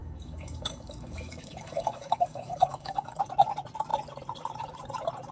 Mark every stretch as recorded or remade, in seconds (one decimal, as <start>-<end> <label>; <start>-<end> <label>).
0.0-3.2 remade; 3.2-5.3 recorded